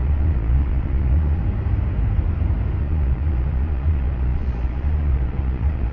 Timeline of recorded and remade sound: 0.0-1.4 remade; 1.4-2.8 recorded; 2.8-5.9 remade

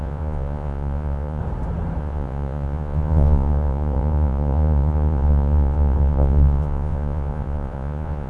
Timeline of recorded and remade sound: 0.0-1.4 remade; 1.4-2.0 recorded; 2.0-8.3 remade

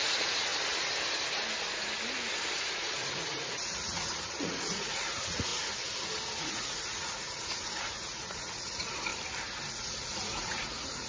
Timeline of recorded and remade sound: 0.0-0.5 remade; 0.5-2.6 recorded; 2.6-5.5 remade; 5.5-6.4 recorded; 6.4-9.1 remade; 9.1-9.7 recorded; 9.7-11.1 remade

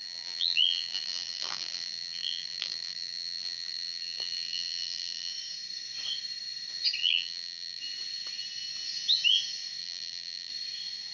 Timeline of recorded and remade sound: 0.0-5.3 remade; 5.3-7.0 recorded; 7.0-7.8 remade; 7.8-9.8 recorded; 9.8-10.5 remade; 10.5-11.1 recorded

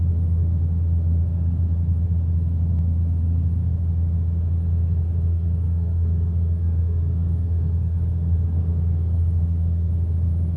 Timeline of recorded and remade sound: 0.0-5.3 recorded; 5.3-9.9 remade; 9.9-10.6 recorded

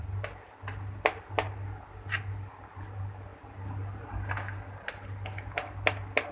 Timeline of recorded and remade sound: 0.0-6.3 recorded

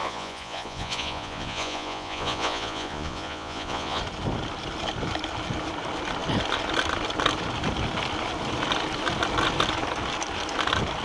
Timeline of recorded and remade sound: 0.0-4.0 remade; 4.0-11.0 recorded

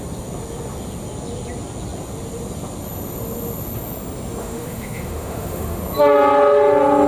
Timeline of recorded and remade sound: 0.0-4.4 recorded; 4.4-5.8 remade; 5.8-7.1 recorded